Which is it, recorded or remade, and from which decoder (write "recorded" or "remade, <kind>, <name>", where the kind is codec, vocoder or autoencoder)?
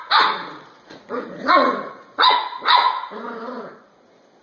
remade, vocoder, Vocos